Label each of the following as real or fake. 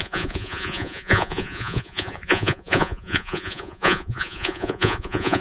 fake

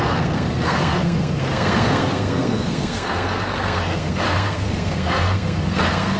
fake